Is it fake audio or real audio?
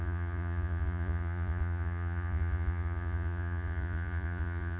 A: fake